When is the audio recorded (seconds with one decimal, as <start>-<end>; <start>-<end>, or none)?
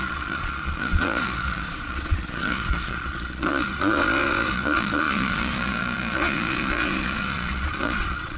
none